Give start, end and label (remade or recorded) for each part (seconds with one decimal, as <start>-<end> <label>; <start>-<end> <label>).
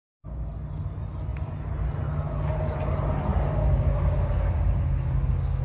0.0-3.3 recorded; 3.3-5.6 remade